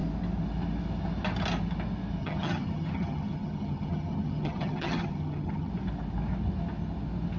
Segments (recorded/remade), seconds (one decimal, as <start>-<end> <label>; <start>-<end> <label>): 0.0-2.2 recorded; 2.2-5.7 remade; 5.7-7.4 recorded